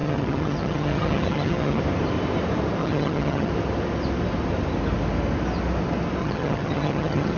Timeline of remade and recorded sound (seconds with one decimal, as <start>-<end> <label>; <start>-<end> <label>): 0.0-1.8 remade; 1.8-2.8 recorded; 2.8-3.5 remade; 3.5-6.2 recorded; 6.2-7.4 remade